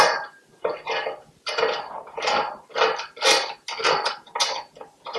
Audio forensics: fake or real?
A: real